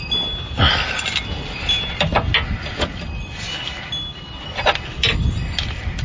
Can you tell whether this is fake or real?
real